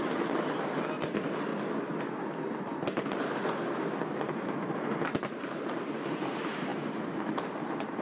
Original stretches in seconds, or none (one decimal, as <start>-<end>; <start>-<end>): 1.5-2.2; 2.7-3.5